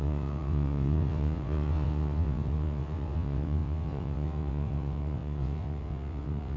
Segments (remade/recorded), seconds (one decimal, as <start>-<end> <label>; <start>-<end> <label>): 0.0-6.6 remade

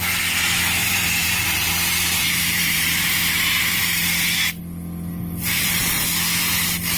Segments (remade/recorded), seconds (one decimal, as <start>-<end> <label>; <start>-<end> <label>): 0.0-0.8 recorded; 0.8-1.7 remade; 1.7-2.2 recorded; 2.2-4.6 remade; 4.6-5.1 recorded; 5.1-5.7 remade; 5.7-7.0 recorded

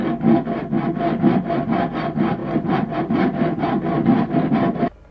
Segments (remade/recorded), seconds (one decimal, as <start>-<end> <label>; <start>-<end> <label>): 0.0-5.1 recorded